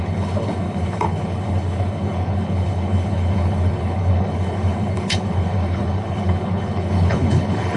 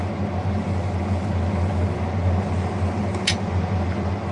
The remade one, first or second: first